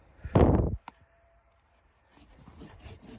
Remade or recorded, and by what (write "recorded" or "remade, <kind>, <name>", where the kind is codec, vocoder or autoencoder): remade, vocoder, BigVGAN v2